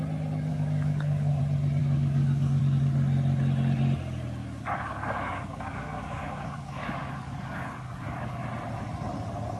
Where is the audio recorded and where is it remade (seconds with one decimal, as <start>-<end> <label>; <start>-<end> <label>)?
0.0-0.5 recorded; 0.5-1.4 remade; 1.4-1.8 recorded; 1.8-2.6 remade; 2.6-4.4 recorded; 4.4-8.4 remade; 8.4-9.6 recorded